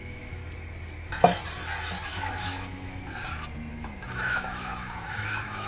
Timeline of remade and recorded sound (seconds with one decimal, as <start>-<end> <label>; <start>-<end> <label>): 0.0-0.4 remade; 0.4-2.1 recorded; 2.1-3.2 remade; 3.2-3.7 recorded; 3.7-5.7 remade